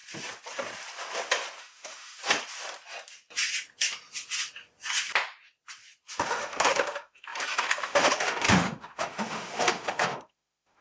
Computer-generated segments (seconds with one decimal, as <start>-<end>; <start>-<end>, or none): 1.6-2.2; 6.2-10.8